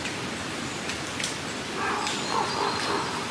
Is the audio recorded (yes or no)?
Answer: yes